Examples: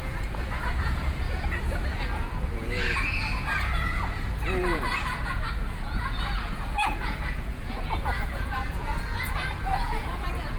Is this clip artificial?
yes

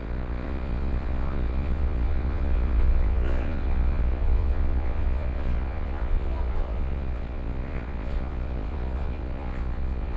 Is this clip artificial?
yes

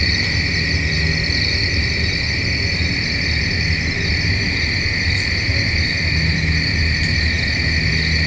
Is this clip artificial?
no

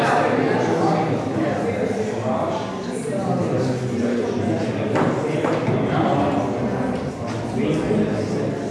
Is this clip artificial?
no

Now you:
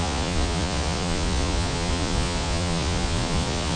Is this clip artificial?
yes